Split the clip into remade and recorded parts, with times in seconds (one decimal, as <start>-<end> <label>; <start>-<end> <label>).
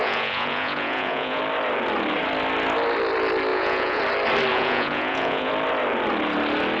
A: 0.0-1.4 remade; 1.4-3.5 recorded; 3.5-4.0 remade; 4.0-4.5 recorded; 4.5-5.5 remade; 5.5-6.8 recorded